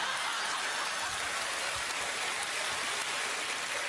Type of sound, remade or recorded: recorded